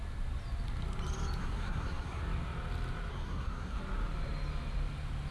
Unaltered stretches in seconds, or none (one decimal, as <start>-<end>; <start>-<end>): 0.0-1.4; 2.2-3.1; 3.8-5.3